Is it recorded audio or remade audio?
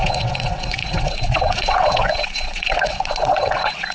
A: remade